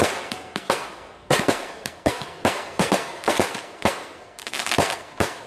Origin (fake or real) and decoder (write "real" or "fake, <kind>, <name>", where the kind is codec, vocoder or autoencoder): fake, codec, SNAC